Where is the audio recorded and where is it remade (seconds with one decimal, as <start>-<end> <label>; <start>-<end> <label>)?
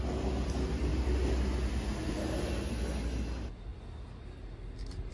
0.0-5.1 recorded